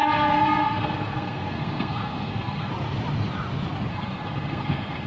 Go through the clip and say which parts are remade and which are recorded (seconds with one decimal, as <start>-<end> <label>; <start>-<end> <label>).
0.0-2.7 remade; 2.7-3.9 recorded; 3.9-5.1 remade